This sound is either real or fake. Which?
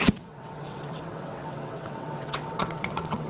fake